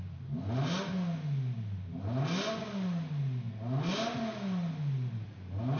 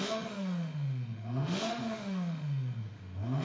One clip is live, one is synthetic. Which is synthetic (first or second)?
second